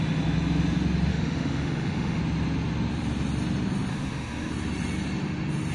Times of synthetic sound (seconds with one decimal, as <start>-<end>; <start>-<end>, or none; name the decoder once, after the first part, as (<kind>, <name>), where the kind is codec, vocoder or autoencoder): 1.1-2.2 (autoencoder, DAC-VAE); 3.9-4.5